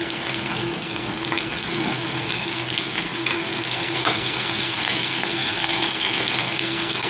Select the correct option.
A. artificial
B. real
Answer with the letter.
A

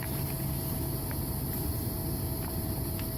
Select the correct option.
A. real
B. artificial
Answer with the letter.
A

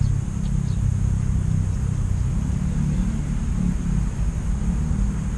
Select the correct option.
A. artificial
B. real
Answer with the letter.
B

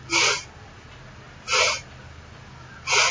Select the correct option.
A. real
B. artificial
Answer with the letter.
A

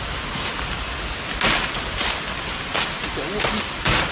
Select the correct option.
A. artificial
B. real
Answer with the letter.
B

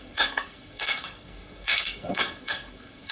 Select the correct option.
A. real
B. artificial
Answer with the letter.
B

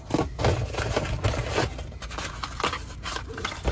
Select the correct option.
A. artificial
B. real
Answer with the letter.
B